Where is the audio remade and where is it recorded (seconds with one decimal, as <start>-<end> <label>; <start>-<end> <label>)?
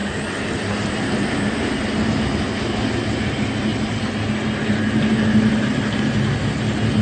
0.0-7.0 recorded